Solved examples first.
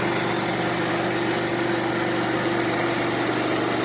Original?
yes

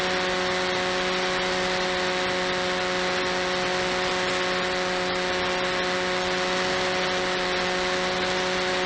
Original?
yes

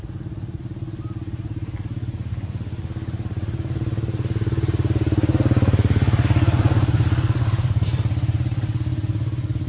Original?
yes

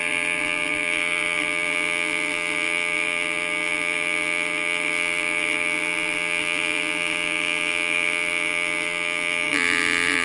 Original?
no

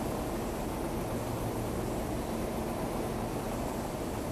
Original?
yes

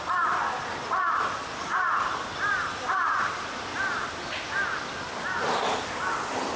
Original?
yes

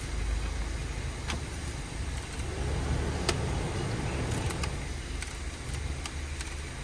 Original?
yes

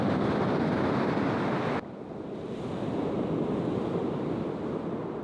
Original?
yes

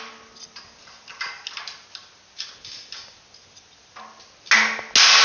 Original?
yes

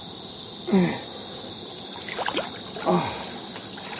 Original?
yes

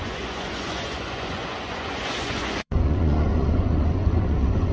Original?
no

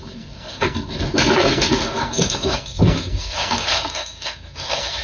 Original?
no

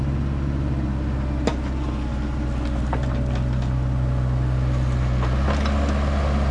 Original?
yes